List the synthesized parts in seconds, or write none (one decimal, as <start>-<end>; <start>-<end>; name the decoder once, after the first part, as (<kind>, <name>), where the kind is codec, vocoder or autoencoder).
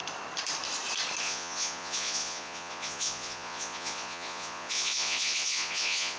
1.2-6.2 (vocoder, Vocos)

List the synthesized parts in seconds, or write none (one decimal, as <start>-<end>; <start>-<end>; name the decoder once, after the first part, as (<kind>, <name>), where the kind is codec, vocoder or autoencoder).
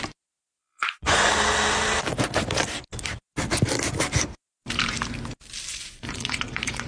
0.6-1.3 (vocoder, Vocos); 5.7-6.9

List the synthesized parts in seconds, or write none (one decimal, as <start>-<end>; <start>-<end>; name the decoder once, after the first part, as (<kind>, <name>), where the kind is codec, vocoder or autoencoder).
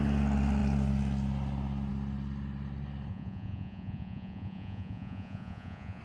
3.1-6.0 (vocoder, Vocos)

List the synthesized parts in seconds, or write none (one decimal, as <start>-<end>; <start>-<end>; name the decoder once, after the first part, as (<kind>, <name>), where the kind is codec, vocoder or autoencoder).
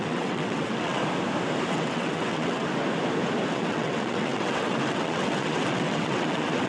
0.0-1.0 (vocoder, WaveNeXt); 1.7-2.7; 3.5-6.7